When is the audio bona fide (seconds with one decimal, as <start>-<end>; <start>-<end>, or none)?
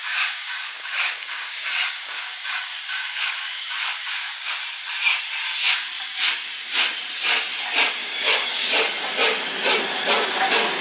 4.5-8.0; 8.7-10.8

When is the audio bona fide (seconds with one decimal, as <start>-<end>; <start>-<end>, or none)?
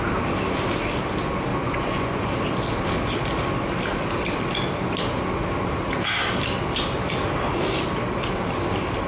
0.0-1.5; 2.3-9.1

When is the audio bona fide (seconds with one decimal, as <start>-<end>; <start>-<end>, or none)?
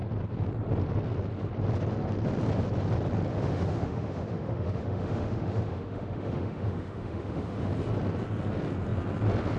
0.0-3.3; 7.7-9.6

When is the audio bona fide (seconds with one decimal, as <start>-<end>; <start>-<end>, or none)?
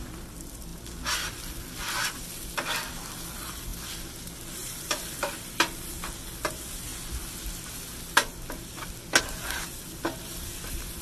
0.7-2.9; 6.9-9.2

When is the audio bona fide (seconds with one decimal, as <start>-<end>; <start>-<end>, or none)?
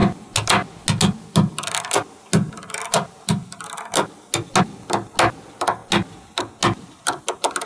0.0-7.7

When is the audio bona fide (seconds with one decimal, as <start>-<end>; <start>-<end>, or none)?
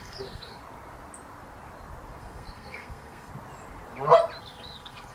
0.6-2.2; 3.3-4.4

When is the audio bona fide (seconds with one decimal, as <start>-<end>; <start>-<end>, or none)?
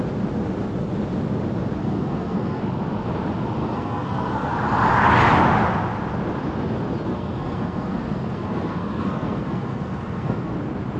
0.0-1.8; 2.6-3.6; 4.5-7.1; 10.5-11.0